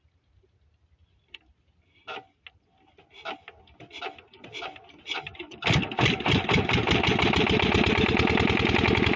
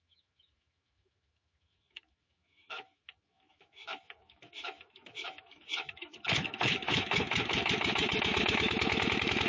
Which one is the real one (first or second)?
first